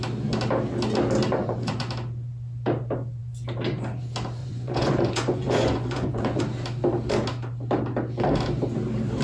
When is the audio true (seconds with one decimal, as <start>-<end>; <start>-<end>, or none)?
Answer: 0.0-1.4; 1.9-4.4; 6.4-9.2